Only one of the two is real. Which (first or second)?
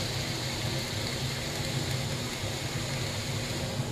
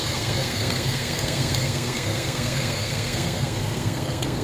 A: first